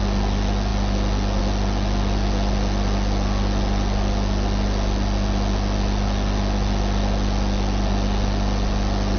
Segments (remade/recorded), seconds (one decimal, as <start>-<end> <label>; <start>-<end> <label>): 0.0-9.2 recorded